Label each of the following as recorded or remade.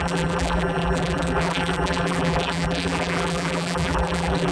remade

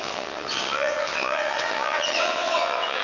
remade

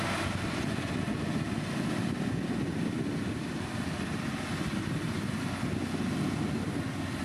recorded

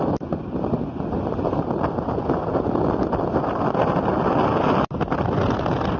recorded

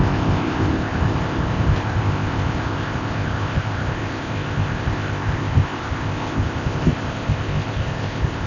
remade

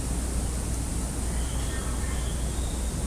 recorded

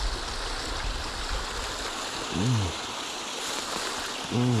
recorded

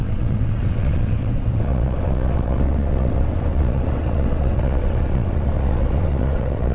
remade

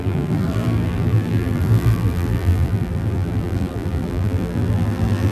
remade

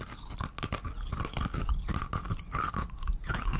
recorded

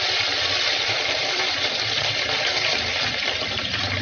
remade